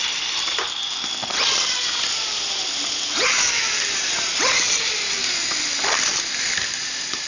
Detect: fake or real real